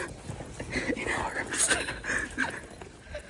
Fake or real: real